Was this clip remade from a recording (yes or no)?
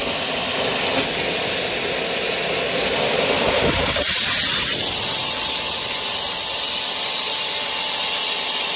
no